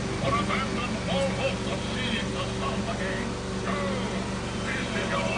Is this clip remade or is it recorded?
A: recorded